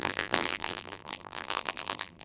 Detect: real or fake fake